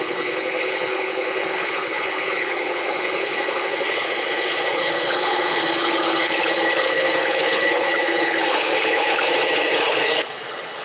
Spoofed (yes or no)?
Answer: yes